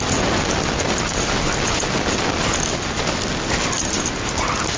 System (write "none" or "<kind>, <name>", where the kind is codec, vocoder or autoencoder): none